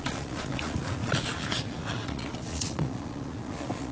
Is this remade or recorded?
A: remade